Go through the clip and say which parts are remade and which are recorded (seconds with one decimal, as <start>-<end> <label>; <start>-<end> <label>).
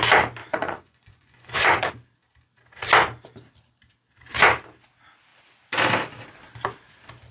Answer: 0.0-0.4 recorded; 0.4-1.9 remade; 1.9-7.3 recorded